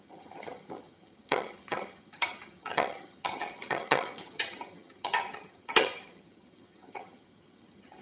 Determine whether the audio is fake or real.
fake